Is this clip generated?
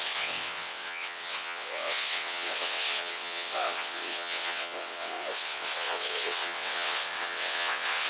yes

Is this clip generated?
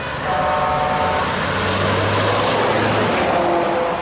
no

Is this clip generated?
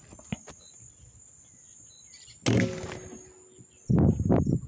no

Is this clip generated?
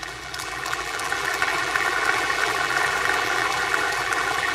yes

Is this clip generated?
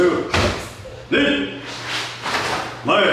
no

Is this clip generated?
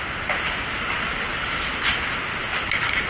no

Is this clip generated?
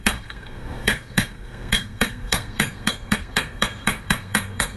yes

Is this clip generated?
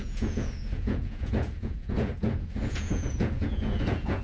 yes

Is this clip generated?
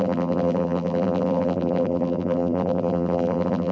yes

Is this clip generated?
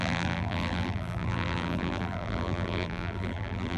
yes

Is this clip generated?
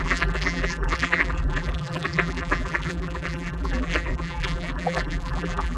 yes